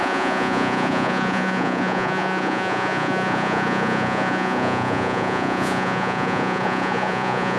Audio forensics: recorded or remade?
remade